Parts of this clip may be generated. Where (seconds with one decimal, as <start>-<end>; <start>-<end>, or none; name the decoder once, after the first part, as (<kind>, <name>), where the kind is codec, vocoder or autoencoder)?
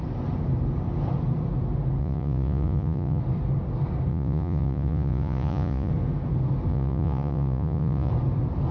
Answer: 2.0-3.2 (vocoder, Vocos); 4.1-5.9; 6.7-8.1